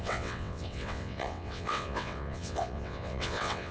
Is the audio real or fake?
fake